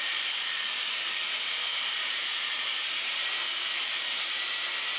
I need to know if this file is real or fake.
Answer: fake